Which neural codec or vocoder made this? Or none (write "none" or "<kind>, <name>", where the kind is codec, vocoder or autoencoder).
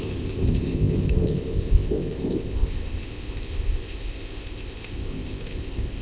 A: codec, ZipCodec